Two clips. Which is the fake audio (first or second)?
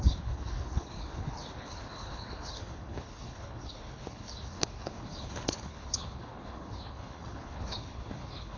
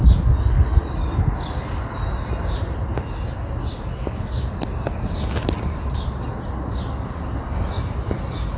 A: first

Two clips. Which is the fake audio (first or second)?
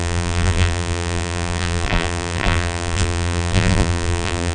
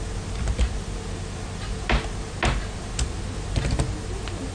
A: first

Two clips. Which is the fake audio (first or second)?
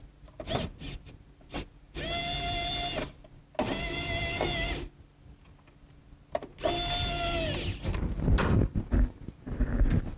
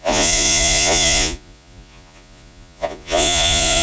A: second